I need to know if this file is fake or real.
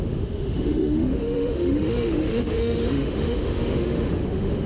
fake